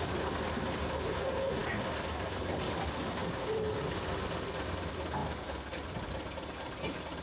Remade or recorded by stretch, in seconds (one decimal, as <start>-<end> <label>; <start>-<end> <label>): 0.0-7.2 recorded